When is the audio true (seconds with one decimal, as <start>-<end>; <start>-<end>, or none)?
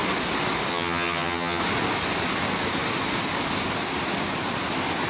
0.0-0.7; 1.6-5.1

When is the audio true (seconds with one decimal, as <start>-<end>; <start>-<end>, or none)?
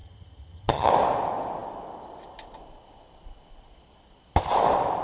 0.9-5.0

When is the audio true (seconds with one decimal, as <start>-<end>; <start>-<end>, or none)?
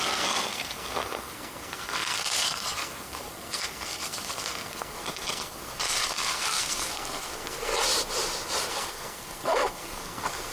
7.7-8.7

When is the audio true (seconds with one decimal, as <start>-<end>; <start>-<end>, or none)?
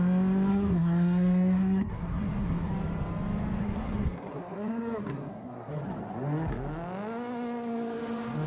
0.0-0.5; 2.7-3.6; 5.8-8.5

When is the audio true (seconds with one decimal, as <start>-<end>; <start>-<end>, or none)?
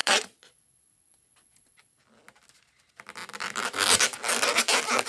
2.0-5.1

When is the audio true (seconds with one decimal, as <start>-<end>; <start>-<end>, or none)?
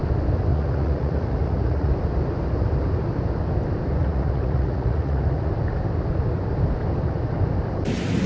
0.0-0.5; 1.9-4.0; 5.5-8.3